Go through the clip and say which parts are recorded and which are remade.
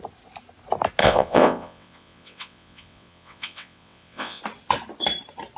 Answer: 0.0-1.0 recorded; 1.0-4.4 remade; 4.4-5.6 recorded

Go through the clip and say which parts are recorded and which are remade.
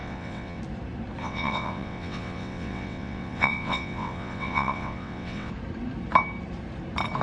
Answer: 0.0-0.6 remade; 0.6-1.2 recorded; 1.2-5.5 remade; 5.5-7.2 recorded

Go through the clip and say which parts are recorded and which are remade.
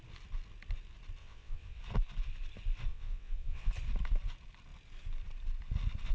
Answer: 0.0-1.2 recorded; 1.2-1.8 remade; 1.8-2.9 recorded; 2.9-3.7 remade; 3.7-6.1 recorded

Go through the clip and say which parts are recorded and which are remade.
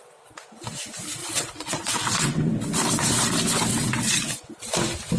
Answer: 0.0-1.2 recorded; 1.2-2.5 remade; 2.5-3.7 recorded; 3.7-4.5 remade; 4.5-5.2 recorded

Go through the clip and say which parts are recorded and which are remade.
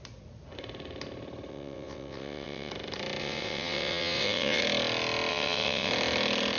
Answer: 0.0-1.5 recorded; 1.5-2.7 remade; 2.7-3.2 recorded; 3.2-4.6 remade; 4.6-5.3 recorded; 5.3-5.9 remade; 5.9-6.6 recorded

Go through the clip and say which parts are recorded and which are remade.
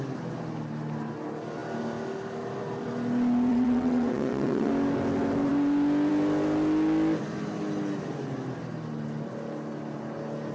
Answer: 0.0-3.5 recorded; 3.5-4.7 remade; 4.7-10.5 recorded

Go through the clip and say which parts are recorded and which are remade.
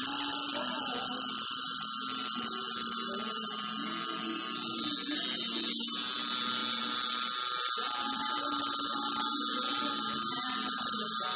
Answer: 0.0-11.4 recorded